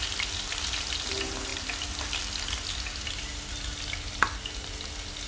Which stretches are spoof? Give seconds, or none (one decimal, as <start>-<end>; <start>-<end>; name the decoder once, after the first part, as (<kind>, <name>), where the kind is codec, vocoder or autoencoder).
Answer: none